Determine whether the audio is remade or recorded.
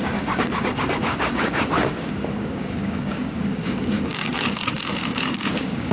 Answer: remade